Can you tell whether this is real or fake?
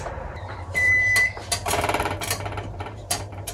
fake